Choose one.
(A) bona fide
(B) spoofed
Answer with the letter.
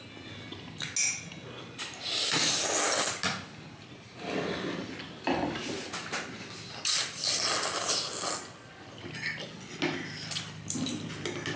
A